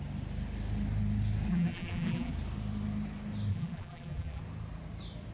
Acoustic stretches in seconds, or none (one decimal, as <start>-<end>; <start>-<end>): 0.0-1.5; 2.3-3.5; 4.4-5.3